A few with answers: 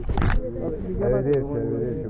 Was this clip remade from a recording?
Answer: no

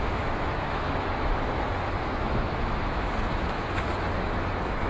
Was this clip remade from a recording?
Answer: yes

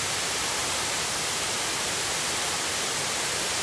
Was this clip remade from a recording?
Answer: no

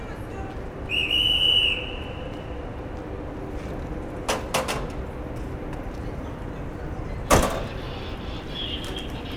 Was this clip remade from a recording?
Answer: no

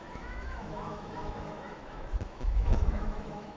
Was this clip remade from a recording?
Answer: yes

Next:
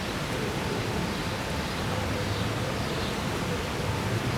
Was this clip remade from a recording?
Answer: no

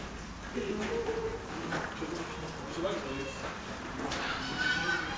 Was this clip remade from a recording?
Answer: no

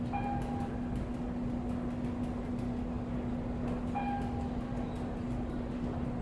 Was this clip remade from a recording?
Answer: no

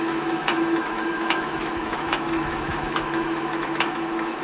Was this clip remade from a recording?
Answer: yes